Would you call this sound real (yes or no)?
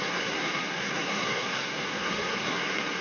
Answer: no